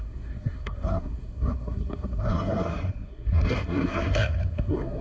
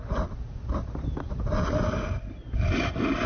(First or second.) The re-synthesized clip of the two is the first